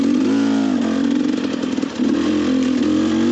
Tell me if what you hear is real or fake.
real